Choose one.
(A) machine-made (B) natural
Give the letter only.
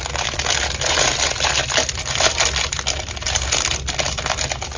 B